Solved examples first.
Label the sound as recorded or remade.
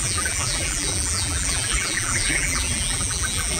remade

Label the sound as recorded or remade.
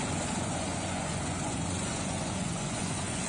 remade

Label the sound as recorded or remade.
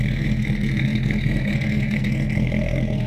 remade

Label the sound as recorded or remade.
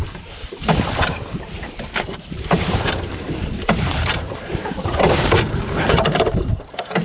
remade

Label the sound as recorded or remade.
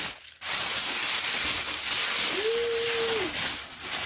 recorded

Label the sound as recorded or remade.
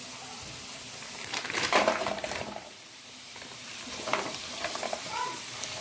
remade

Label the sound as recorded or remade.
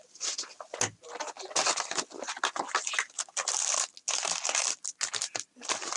recorded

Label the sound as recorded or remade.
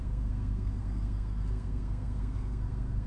remade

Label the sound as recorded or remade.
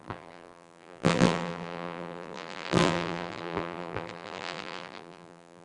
remade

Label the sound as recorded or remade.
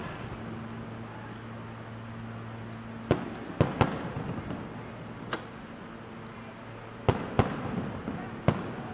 recorded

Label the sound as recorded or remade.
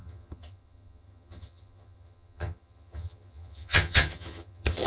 remade